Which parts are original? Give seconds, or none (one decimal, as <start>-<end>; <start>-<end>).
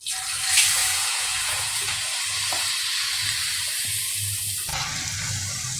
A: 0.0-0.8; 2.2-5.8